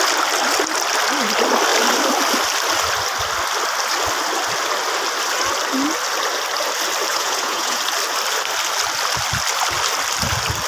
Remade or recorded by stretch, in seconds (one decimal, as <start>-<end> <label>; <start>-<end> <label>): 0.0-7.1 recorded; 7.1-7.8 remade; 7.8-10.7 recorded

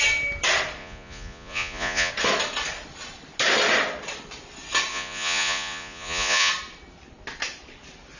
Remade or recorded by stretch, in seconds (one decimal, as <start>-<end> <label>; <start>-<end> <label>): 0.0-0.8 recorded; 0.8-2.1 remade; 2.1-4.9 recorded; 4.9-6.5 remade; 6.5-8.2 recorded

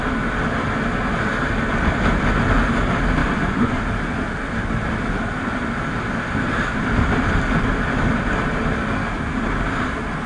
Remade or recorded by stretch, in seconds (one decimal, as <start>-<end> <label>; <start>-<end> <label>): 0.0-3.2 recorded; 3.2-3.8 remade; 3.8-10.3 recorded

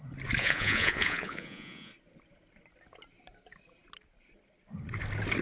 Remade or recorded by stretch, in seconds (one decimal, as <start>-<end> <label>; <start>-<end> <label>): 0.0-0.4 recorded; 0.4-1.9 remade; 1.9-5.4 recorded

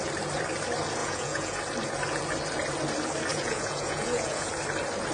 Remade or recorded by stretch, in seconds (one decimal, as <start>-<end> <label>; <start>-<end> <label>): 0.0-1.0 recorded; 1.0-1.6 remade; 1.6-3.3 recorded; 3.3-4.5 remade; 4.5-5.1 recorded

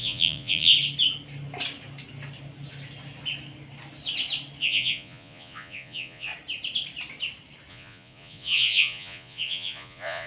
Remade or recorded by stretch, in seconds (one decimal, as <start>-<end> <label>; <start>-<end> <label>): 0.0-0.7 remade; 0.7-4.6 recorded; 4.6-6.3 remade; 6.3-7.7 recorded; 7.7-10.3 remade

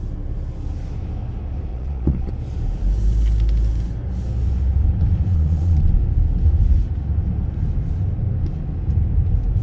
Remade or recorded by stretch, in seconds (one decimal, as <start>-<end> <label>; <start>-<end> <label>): 0.0-1.7 recorded; 1.7-2.3 remade; 2.3-5.3 recorded; 5.3-5.9 remade; 5.9-9.6 recorded

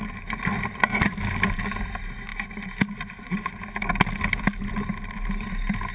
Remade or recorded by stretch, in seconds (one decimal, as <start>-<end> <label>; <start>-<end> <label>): 0.0-5.9 recorded